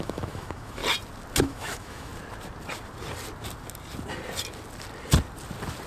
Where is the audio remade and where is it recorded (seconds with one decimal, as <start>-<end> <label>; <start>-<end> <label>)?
0.0-0.8 remade; 0.8-1.4 recorded; 1.4-2.1 remade; 2.1-5.9 recorded